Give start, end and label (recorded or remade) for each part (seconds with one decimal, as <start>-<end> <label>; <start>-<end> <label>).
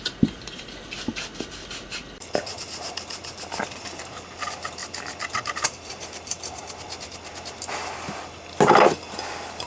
0.0-4.8 recorded; 4.8-6.8 remade; 6.8-9.7 recorded